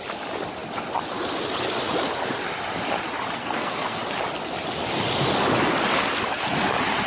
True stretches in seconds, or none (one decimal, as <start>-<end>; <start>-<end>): 0.0-3.4; 4.0-7.1